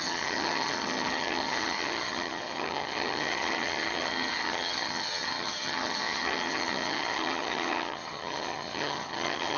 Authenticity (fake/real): fake